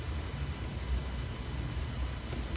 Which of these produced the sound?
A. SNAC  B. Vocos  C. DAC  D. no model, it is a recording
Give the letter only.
D